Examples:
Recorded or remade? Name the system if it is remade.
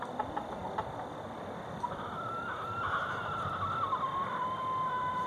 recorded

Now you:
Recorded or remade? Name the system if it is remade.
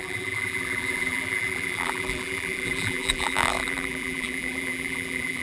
remade, vocoder, BigVGAN v2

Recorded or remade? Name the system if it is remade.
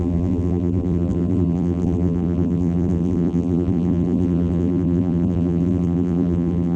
remade, vocoder, BigVGAN v2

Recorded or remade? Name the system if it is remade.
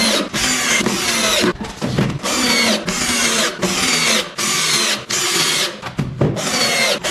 recorded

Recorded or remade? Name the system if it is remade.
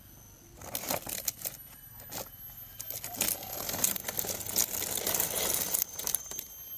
recorded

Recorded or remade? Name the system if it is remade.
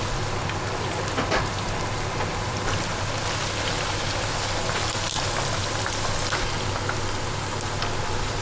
recorded